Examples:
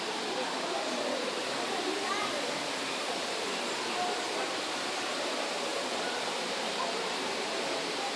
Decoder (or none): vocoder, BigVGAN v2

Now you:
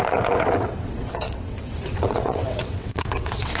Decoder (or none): vocoder, WaveNeXt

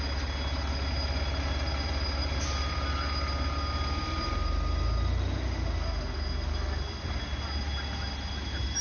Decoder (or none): none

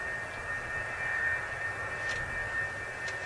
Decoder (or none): none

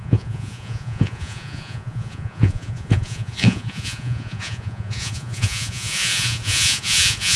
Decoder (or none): vocoder, Vocos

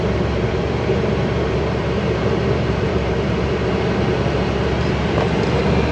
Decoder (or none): vocoder, BigVGAN v2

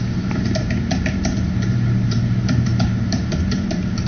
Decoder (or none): vocoder, BigVGAN v2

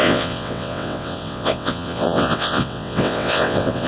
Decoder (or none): vocoder, WaveNeXt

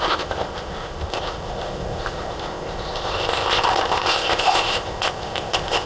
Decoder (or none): codec, ZipCodec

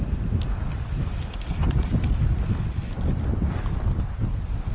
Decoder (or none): vocoder, BigVGAN v2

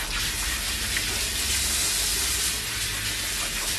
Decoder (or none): none